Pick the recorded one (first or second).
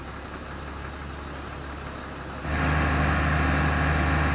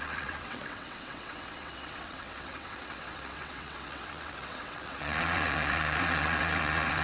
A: first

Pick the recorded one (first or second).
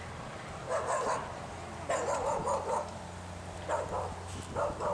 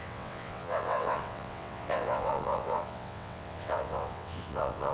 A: first